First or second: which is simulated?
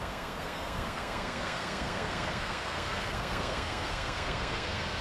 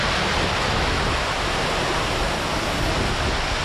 first